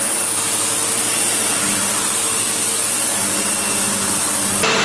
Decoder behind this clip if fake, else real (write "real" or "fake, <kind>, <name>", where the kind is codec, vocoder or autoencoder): real